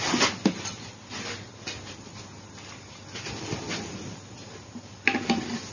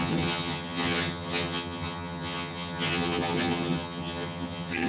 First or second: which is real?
first